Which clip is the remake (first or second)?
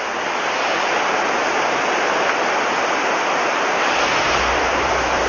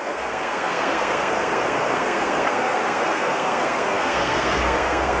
second